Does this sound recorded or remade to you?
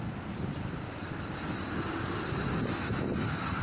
recorded